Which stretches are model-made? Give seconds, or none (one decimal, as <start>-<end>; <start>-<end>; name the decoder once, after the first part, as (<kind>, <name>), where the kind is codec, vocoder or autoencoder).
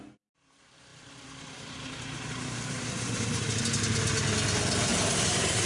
0.9-3.6 (vocoder, BigVGAN v2); 4.9-5.7